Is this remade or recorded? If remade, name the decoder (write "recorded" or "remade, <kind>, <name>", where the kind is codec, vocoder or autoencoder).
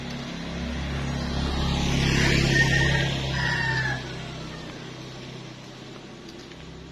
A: recorded